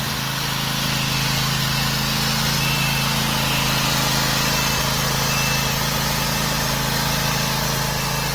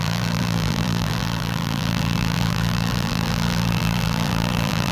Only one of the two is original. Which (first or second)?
first